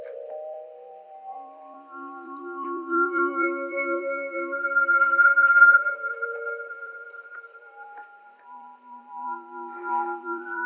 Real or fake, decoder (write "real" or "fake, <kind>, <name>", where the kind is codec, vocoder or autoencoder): fake, vocoder, BigVGAN v2